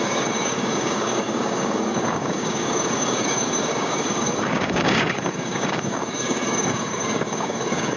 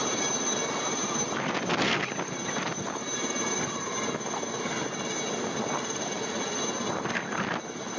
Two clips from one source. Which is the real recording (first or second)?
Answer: second